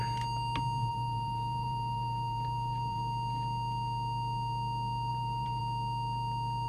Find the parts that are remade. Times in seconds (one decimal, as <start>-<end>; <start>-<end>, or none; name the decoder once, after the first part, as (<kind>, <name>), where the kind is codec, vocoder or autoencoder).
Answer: 0.9-3.0 (vocoder, BigVGAN v2); 5.1-5.6